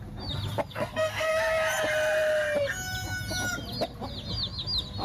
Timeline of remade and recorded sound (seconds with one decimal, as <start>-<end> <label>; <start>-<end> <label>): 0.0-0.7 recorded; 0.7-1.3 remade; 1.3-5.0 recorded